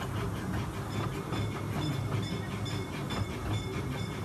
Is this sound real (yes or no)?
yes